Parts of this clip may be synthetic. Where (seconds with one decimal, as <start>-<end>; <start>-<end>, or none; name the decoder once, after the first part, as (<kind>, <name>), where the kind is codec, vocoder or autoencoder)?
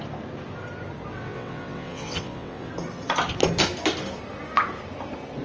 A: 1.1-2.7 (vocoder, WaveNeXt)